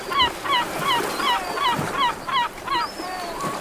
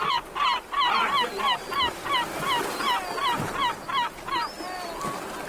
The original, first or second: second